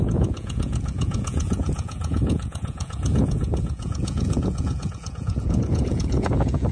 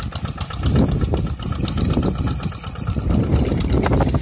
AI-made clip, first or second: first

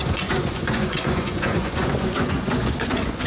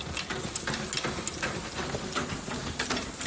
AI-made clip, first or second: first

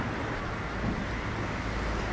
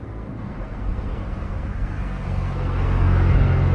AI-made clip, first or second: second